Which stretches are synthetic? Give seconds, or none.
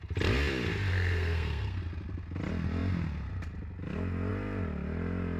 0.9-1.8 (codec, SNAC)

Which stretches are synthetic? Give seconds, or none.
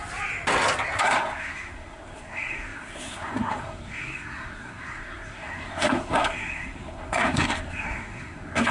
1.0-8.7 (codec, SNAC)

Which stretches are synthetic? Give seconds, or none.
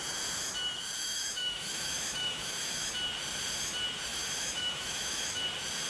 1.0-2.9 (autoencoder, DAC-VAE); 4.1-5.4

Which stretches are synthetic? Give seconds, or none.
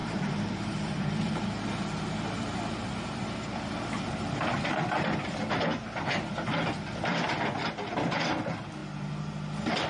0.0-1.4 (vocoder, BigVGAN v2)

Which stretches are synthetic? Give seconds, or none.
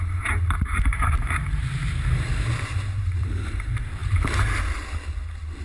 0.0-4.0 (vocoder, BigVGAN v2)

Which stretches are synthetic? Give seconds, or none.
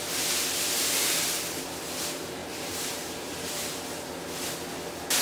2.4-4.1 (vocoder, BigVGAN v2)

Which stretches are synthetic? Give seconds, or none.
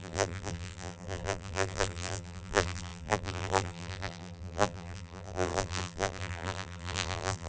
0.0-7.5 (vocoder, BigVGAN v2)